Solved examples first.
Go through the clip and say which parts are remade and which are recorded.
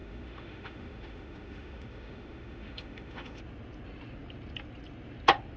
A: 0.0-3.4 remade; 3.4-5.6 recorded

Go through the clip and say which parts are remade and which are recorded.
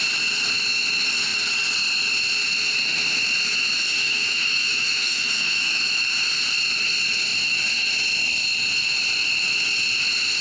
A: 0.0-4.0 recorded; 4.0-6.0 remade; 6.0-10.4 recorded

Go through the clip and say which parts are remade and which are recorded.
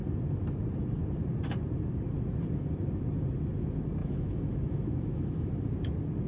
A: 0.0-4.0 recorded; 4.0-5.5 remade; 5.5-6.3 recorded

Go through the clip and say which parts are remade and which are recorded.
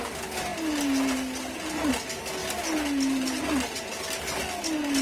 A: 0.0-5.0 recorded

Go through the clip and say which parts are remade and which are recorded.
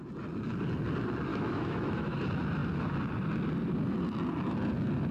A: 0.0-1.3 recorded; 1.3-2.2 remade; 2.2-5.1 recorded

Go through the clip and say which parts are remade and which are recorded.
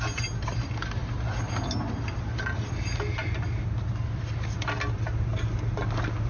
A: 0.0-6.3 recorded